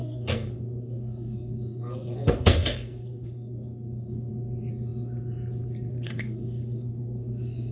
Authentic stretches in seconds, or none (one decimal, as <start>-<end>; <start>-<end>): 4.3-5.9